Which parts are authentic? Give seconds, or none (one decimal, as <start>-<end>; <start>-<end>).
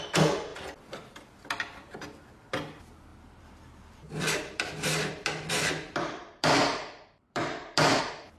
0.0-3.1; 8.0-8.4